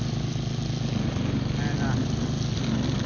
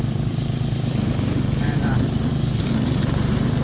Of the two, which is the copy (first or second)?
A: second